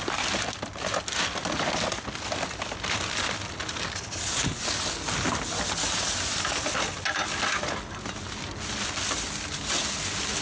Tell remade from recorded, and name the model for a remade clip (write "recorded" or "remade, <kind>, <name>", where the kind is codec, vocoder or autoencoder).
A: recorded